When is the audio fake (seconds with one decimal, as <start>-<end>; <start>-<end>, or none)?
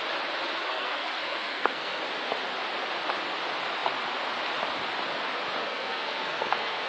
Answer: 0.6-2.0; 5.6-6.9